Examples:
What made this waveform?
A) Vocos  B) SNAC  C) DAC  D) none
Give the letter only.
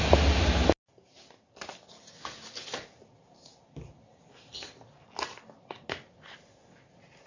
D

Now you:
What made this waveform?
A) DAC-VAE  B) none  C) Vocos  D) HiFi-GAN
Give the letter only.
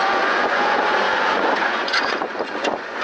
C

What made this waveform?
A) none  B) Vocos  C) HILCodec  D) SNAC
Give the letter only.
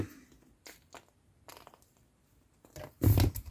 A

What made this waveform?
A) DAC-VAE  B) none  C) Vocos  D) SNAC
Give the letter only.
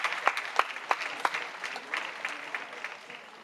B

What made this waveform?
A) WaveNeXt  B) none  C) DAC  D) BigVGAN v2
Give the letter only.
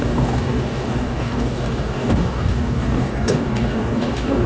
C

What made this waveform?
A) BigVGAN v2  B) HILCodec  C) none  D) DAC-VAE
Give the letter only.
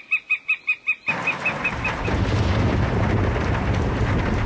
C